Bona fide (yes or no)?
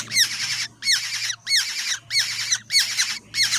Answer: yes